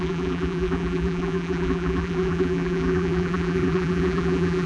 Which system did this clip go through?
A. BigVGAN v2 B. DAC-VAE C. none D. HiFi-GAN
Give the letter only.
A